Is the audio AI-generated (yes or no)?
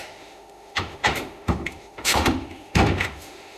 yes